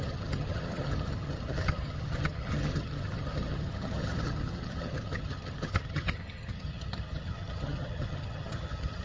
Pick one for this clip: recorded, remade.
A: remade